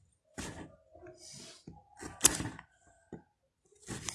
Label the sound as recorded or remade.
recorded